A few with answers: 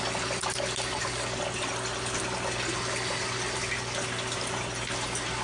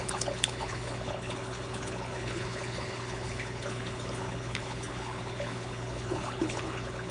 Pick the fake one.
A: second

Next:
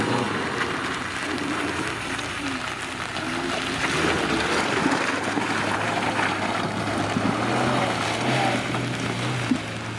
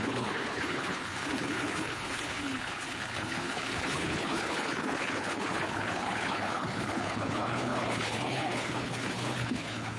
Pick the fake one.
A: second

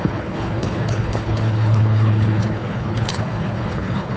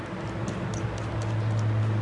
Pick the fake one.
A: first